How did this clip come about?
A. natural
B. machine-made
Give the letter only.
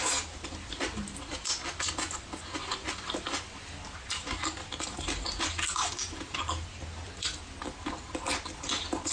A